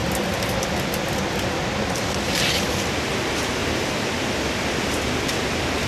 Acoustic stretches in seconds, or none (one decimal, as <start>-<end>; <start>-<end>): 0.0-5.9